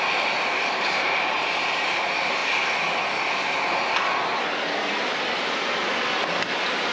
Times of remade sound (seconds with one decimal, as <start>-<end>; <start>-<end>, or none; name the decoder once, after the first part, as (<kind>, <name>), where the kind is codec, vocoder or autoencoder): 0.0-2.4 (vocoder, BigVGAN v2); 6.5-6.9